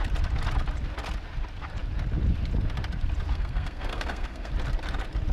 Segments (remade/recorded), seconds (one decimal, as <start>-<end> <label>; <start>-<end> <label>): 0.0-3.3 recorded; 3.3-4.5 remade; 4.5-5.3 recorded